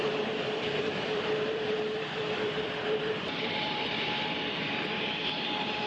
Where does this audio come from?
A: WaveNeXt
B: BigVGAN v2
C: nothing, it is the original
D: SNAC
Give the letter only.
B